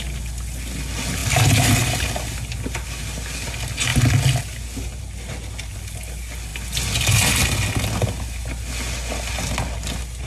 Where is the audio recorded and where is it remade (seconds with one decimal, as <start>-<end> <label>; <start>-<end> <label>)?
0.0-10.3 recorded